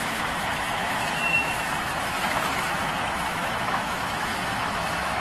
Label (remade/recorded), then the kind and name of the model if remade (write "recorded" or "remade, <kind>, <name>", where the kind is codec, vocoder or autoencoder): remade, autoencoder, DAC-VAE